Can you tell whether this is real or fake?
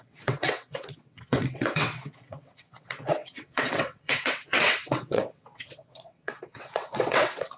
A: fake